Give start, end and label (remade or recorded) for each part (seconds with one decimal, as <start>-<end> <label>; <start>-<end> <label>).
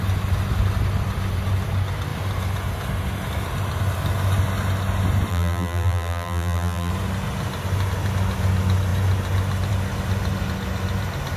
0.0-5.3 recorded; 5.3-6.9 remade; 6.9-11.4 recorded